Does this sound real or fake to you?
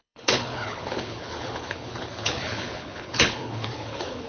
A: fake